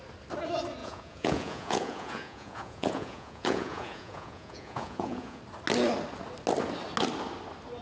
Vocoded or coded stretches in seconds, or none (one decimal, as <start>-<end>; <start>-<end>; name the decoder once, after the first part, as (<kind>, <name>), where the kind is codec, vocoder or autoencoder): 0.8-5.4 (vocoder, Vocos)